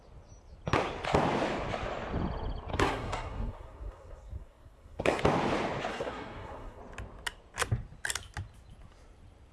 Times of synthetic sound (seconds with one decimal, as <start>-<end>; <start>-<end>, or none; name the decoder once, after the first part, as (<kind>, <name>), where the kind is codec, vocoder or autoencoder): 2.7-5.2 (codec, SNAC); 5.9-6.8